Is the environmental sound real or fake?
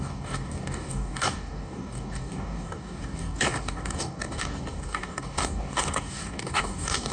fake